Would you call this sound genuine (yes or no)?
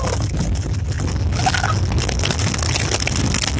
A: yes